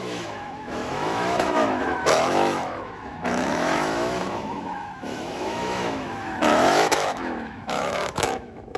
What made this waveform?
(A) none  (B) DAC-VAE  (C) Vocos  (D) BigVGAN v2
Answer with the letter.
B